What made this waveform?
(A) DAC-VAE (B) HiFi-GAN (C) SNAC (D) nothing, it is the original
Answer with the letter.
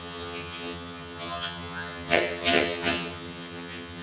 B